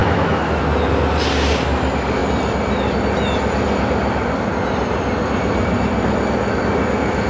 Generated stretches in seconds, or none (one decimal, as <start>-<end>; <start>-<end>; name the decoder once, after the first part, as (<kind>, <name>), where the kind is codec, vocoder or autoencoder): 0.0-0.6 (autoencoder, DAC-VAE)